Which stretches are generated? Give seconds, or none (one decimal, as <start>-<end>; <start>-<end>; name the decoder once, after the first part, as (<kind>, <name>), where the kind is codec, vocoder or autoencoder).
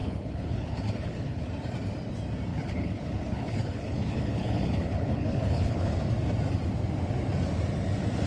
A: 0.0-1.5 (codec, HILCodec); 2.5-5.9